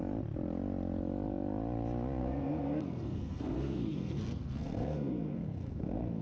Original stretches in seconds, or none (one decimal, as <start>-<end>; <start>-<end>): 0.0-2.2